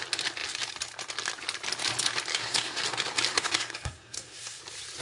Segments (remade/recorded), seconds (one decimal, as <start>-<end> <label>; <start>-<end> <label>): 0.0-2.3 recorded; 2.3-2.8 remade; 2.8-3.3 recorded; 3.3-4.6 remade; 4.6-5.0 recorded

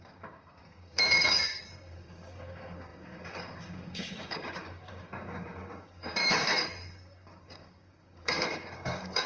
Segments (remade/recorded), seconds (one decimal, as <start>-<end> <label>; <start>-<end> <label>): 0.0-9.3 remade

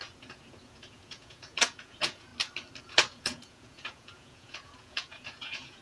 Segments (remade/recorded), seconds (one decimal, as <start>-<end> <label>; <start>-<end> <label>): 0.0-2.3 remade; 2.3-2.8 recorded; 2.8-5.8 remade